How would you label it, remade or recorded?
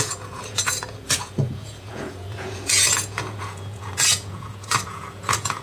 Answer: remade